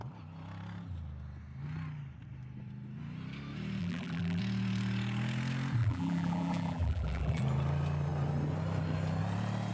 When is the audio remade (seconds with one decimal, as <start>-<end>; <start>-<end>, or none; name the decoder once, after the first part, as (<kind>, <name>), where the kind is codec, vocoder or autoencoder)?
3.8-4.4 (vocoder, BigVGAN v2); 5.8-7.4